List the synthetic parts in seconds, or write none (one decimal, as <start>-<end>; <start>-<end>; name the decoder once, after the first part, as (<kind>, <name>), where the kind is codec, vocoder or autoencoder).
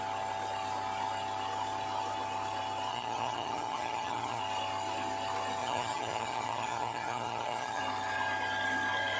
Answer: 2.9-4.4 (vocoder, HiFi-GAN); 5.6-7.8